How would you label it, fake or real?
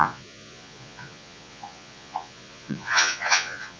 fake